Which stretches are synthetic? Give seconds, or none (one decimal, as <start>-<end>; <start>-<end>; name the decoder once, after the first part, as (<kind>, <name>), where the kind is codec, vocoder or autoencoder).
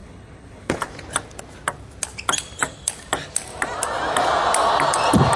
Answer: 0.0-0.9 (codec, HILCodec)